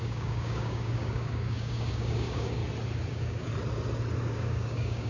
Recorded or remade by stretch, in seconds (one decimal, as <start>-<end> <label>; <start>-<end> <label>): 0.0-2.6 remade; 2.6-3.1 recorded; 3.1-3.5 remade; 3.5-4.2 recorded; 4.2-5.1 remade